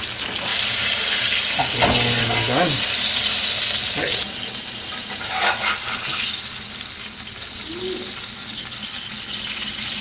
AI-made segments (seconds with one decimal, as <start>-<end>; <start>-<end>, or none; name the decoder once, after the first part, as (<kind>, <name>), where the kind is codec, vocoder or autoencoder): none

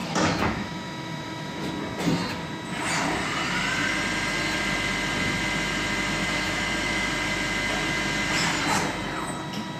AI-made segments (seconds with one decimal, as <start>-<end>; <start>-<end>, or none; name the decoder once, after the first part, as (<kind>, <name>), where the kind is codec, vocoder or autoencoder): 0.0-1.7 (autoencoder, DAC-VAE); 6.2-7.1

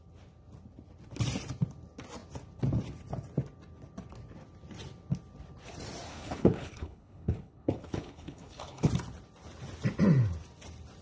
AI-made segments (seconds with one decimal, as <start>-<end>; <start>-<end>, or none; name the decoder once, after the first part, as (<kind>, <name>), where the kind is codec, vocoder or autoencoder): 6.1-8.9 (codec, HILCodec)